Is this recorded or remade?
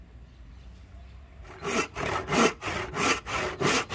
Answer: recorded